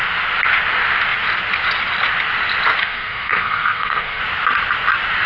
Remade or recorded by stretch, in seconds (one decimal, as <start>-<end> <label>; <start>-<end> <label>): 0.0-2.8 recorded; 2.8-4.2 remade; 4.2-5.3 recorded